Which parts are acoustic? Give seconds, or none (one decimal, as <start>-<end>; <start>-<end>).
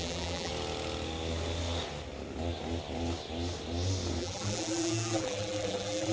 0.5-4.2